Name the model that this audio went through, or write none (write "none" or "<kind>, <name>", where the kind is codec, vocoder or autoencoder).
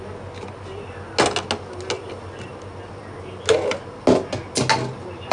none